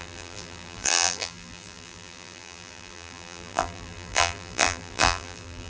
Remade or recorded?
remade